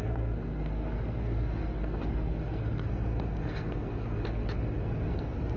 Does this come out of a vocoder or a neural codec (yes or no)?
yes